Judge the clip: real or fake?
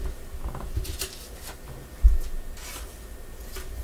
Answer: real